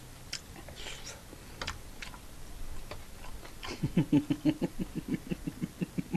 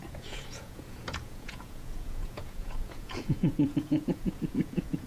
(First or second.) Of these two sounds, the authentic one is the first